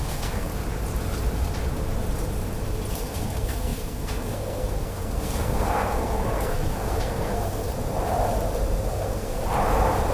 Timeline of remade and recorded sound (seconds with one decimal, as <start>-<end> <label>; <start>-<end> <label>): 0.0-0.5 remade; 0.5-2.9 recorded; 2.9-7.7 remade; 7.7-8.9 recorded; 8.9-9.4 remade; 9.4-10.1 recorded